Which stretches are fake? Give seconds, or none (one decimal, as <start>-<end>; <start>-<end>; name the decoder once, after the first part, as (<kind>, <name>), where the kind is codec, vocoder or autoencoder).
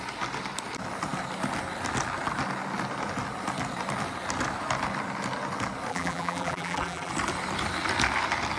5.9-7.1 (vocoder, BigVGAN v2)